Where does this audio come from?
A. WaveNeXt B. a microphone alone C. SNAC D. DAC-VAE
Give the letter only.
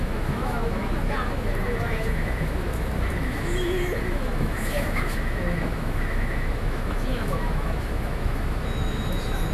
D